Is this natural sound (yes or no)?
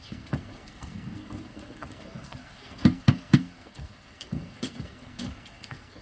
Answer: no